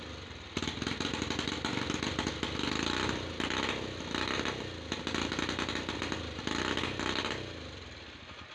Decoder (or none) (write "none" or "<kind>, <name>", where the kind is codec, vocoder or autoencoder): none